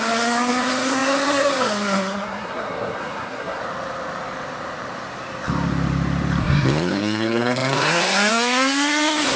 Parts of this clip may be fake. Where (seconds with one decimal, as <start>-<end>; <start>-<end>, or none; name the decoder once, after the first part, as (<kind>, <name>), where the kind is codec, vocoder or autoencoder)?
0.0-3.6 (codec, SNAC); 6.4-9.4